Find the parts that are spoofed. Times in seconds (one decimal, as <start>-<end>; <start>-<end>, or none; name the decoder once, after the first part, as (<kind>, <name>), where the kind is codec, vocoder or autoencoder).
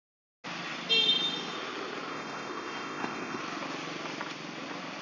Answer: 2.1-3.4 (codec, ZipCodec)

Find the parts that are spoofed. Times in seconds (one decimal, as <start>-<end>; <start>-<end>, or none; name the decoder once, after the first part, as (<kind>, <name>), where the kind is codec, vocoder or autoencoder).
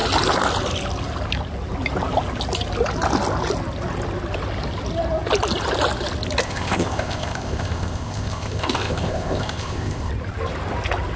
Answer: 6.4-10.1 (codec, ZipCodec)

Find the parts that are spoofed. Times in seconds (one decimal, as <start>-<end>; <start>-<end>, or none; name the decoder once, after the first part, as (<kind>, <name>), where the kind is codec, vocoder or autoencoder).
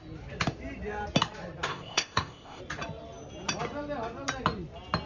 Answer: 1.7-2.6 (codec, ZipCodec)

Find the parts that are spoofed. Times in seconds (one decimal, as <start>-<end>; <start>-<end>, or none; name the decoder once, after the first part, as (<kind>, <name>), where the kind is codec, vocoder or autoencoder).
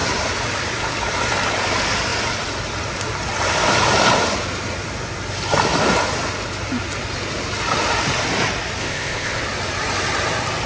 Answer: 8.8-9.4 (codec, ZipCodec)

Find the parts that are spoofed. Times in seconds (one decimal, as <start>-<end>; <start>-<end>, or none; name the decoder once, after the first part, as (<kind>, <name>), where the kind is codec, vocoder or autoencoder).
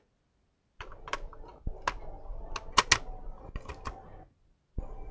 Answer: none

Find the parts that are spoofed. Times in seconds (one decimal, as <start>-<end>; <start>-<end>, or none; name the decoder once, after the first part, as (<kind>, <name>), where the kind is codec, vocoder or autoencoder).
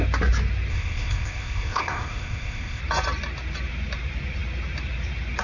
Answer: 0.7-2.8 (codec, ZipCodec)